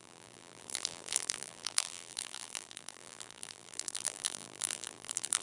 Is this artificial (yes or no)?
yes